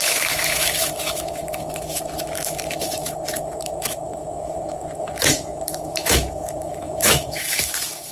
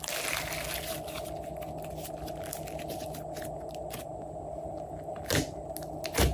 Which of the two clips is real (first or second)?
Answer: second